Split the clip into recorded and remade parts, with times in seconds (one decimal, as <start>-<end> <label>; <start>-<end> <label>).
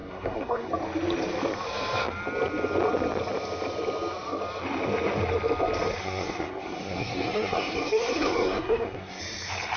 0.0-0.7 remade; 0.7-6.0 recorded; 6.0-9.2 remade; 9.2-9.8 recorded